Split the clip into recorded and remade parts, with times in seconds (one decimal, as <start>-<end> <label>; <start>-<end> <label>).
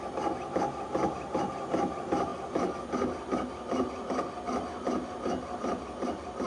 0.0-6.5 recorded